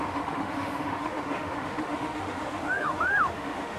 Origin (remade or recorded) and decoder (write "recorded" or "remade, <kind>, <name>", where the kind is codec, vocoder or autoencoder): remade, autoencoder, DAC-VAE